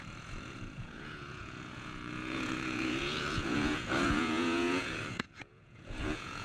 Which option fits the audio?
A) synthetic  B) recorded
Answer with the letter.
A